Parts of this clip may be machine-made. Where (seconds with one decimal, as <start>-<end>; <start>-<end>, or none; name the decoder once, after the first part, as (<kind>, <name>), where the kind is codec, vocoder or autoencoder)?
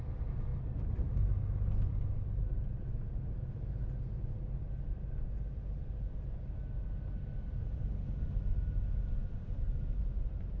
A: none